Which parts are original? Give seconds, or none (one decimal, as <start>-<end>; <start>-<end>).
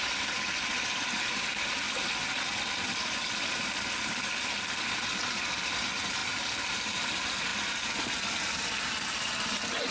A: 0.0-9.9